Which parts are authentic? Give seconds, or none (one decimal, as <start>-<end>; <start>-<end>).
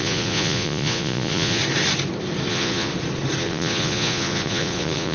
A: 1.6-2.5; 2.9-3.4